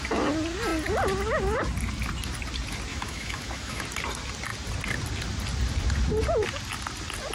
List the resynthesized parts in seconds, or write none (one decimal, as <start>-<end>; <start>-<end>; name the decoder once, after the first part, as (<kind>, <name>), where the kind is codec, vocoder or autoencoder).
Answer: 2.9-3.8 (autoencoder, DAC-VAE)